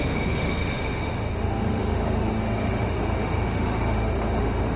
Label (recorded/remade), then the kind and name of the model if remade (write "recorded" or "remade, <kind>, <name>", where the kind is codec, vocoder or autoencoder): remade, autoencoder, DAC-VAE